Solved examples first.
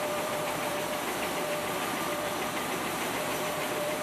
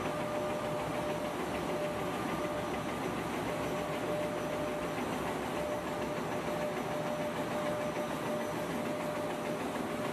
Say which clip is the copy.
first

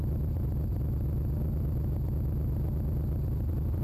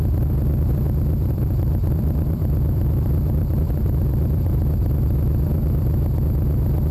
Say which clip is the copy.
second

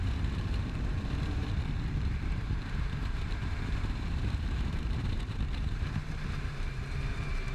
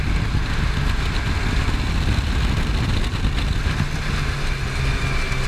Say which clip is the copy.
first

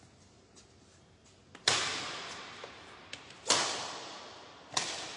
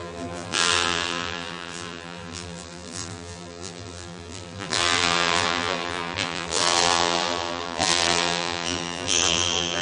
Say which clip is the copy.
second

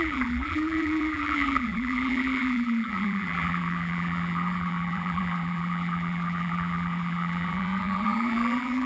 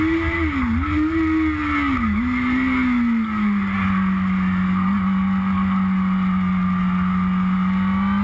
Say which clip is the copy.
first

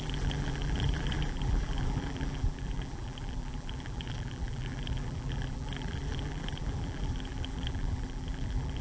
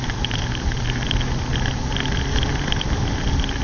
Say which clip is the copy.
first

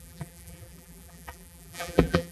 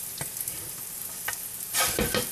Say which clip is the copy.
first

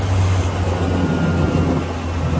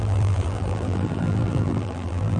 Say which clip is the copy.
second